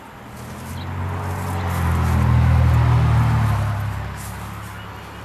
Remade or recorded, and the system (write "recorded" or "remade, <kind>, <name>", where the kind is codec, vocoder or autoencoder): recorded